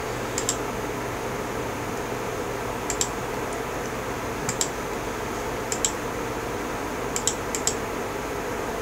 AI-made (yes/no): no